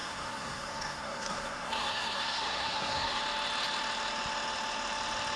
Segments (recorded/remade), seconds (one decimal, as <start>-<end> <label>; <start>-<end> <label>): 0.0-3.2 remade; 3.2-5.4 recorded